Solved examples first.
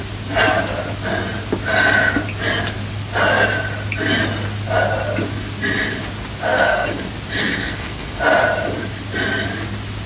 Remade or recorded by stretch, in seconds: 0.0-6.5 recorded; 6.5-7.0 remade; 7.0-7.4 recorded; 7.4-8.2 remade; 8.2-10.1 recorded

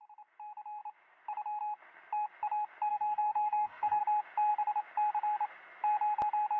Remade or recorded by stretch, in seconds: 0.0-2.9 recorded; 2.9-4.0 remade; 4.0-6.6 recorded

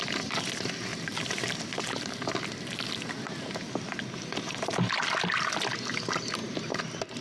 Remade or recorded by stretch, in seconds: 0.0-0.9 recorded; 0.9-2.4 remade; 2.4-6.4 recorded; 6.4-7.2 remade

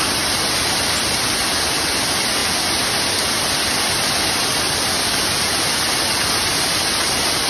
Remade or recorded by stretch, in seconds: 0.0-7.5 recorded

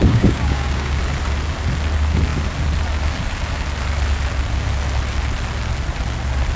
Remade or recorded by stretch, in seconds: 0.0-1.0 remade; 1.0-6.6 recorded

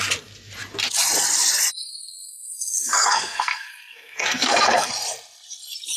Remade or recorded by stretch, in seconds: 0.0-1.9 recorded; 1.9-4.9 remade; 4.9-6.0 recorded

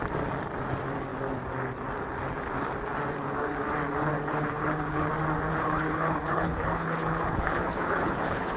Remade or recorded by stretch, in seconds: 0.0-4.1 recorded; 4.1-5.1 remade; 5.1-5.5 recorded; 5.5-8.6 remade

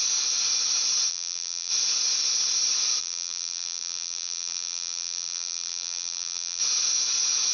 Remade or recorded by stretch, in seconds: 0.0-1.1 recorded; 1.1-1.7 remade; 1.7-3.0 recorded; 3.0-6.6 remade; 6.6-7.5 recorded